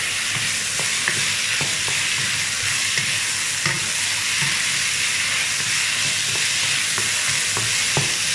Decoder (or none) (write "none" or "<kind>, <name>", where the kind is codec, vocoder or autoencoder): none